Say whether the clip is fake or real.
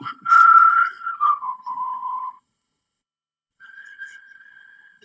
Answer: fake